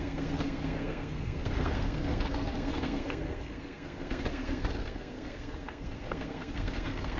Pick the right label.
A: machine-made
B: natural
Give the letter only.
A